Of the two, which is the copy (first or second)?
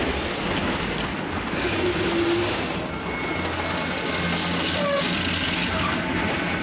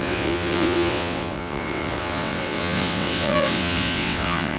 second